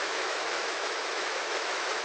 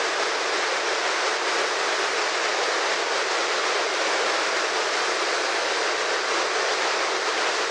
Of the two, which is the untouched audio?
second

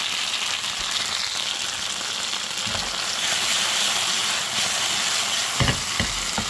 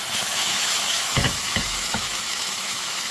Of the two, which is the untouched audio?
first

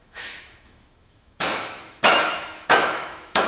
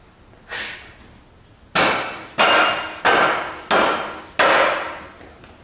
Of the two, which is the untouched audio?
second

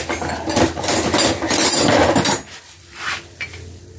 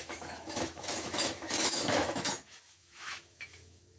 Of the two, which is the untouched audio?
first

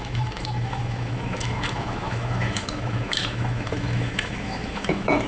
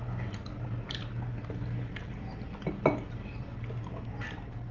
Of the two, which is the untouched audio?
second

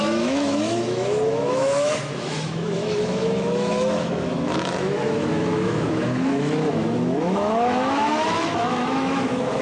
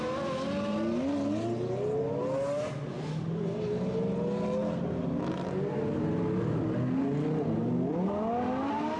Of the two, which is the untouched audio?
second